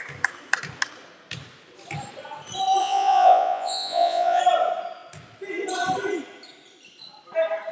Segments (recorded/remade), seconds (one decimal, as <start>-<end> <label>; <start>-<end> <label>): 0.0-2.8 recorded; 2.8-4.4 remade; 4.4-7.7 recorded